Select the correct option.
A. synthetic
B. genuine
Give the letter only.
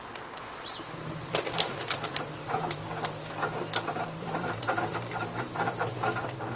A